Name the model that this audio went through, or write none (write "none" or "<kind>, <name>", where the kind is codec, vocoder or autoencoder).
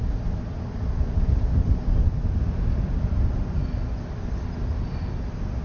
none